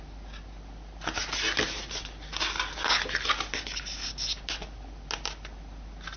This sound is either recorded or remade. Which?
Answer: recorded